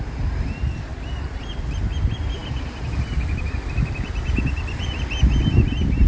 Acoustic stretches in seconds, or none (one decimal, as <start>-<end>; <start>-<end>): 0.0-2.4; 5.6-6.1